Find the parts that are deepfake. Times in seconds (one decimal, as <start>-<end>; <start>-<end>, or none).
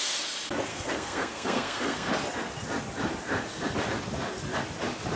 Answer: 0.7-2.1